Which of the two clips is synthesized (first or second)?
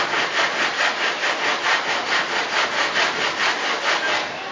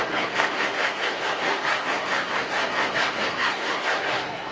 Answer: second